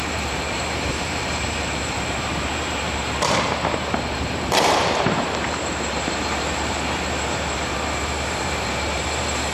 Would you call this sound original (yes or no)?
no